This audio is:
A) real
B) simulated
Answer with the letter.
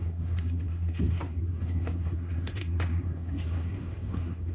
B